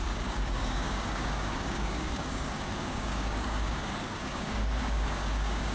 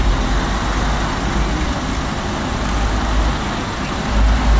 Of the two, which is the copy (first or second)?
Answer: first